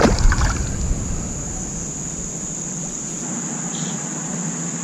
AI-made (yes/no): no